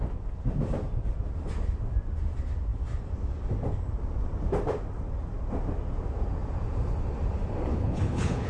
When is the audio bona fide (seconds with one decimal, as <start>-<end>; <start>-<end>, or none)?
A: 0.0-7.7